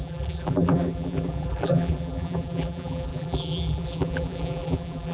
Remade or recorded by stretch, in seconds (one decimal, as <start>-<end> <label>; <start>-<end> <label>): 0.0-5.1 remade